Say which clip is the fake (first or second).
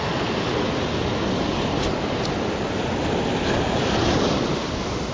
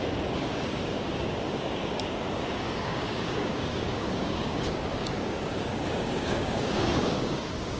second